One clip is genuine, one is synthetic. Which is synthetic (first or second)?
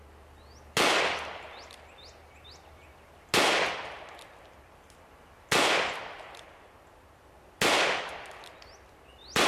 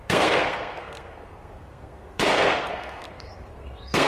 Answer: second